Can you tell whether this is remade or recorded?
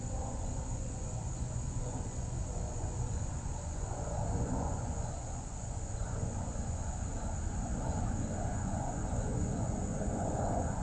remade